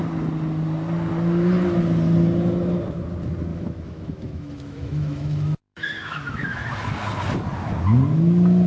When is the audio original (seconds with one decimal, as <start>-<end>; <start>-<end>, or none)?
0.0-3.5; 6.7-8.7